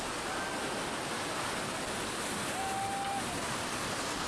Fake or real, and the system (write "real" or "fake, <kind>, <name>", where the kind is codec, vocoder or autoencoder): real